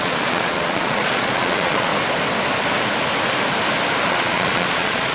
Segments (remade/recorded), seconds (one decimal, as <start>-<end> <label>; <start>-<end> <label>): 0.0-1.9 remade; 1.9-4.1 recorded; 4.1-5.1 remade

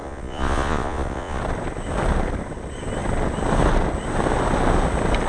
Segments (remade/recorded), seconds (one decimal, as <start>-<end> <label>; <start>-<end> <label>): 0.0-1.4 remade; 1.4-5.3 recorded

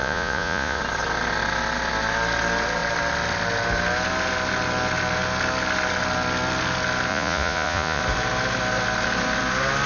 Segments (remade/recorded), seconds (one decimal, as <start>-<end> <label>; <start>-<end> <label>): 0.0-0.8 remade; 0.8-7.1 recorded; 7.1-8.0 remade; 8.0-9.9 recorded

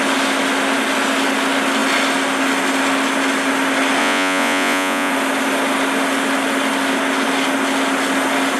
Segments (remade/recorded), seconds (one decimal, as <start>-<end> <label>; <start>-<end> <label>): 0.0-4.0 recorded; 4.0-5.1 remade; 5.1-8.6 recorded

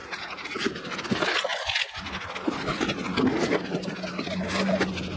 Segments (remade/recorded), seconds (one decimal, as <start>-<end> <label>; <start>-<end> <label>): 0.0-0.7 remade; 0.7-5.2 recorded

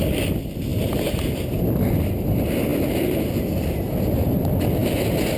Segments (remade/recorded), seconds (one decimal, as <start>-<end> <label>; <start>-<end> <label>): 0.0-5.4 recorded

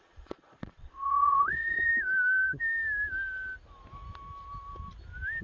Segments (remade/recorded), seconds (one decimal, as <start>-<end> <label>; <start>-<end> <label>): 0.0-1.9 remade; 1.9-5.4 recorded

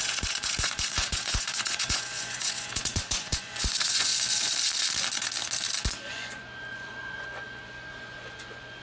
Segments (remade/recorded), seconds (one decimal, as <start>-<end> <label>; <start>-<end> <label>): 0.0-4.1 remade; 4.1-6.1 recorded; 6.1-8.8 remade